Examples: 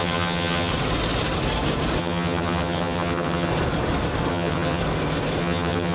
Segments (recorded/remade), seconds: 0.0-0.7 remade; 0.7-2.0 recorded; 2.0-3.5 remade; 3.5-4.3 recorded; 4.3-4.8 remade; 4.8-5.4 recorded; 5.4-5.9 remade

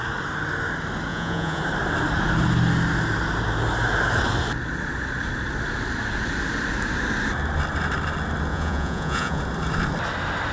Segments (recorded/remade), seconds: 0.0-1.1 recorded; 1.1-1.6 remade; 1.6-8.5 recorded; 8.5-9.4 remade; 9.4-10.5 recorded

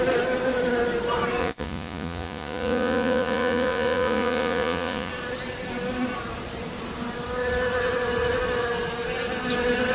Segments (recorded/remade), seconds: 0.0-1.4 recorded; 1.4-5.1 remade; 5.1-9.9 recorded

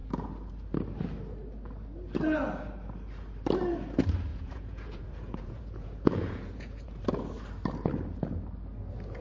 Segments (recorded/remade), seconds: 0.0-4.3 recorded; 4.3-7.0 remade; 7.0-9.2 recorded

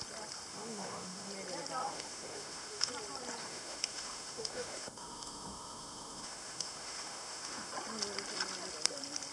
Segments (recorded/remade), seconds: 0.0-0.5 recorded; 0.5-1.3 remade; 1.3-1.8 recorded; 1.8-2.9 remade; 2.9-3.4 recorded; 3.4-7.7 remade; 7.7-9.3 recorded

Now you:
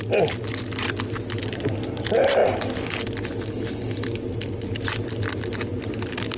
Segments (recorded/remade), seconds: 0.0-6.4 recorded

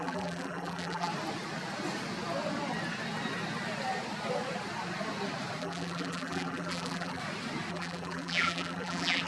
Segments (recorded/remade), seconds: 0.0-1.1 remade; 1.1-5.6 recorded; 5.6-7.2 remade; 7.2-7.7 recorded; 7.7-9.3 remade

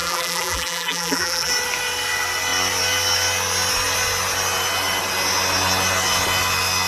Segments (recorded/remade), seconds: 0.0-1.5 remade; 1.5-6.9 recorded